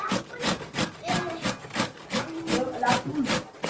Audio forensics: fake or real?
real